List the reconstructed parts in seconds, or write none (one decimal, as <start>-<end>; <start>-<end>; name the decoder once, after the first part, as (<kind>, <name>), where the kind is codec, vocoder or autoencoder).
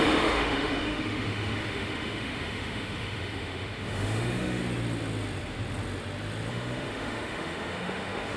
0.0-4.6 (autoencoder, DAC-VAE); 6.5-8.4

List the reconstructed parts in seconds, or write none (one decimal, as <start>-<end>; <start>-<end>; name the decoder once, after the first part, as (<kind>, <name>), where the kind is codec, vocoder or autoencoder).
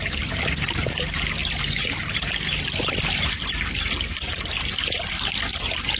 none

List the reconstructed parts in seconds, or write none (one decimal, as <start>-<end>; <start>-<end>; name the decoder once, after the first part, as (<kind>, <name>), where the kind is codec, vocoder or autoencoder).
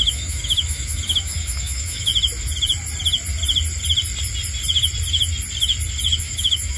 0.0-2.1 (autoencoder, DAC-VAE); 6.2-6.8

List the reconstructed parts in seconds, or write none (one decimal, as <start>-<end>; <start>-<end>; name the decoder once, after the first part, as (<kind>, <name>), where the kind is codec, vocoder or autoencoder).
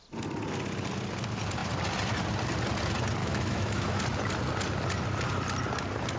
3.2-4.0 (autoencoder, DAC-VAE)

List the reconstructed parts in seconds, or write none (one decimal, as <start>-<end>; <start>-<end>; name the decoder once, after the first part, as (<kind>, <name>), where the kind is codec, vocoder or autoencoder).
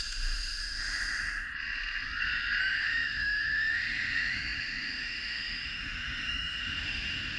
0.0-1.5 (autoencoder, DAC-VAE); 2.6-7.4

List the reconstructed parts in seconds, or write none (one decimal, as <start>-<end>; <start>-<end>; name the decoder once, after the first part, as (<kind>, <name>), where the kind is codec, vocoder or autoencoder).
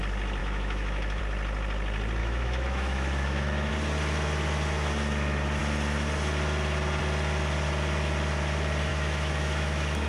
0.4-1.2 (autoencoder, DAC-VAE); 2.2-3.7; 8.9-10.1